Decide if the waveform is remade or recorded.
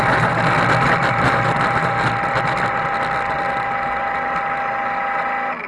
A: recorded